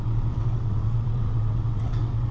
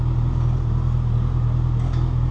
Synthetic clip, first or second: first